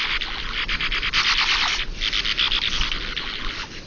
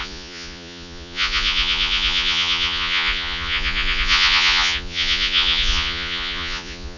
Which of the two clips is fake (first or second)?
second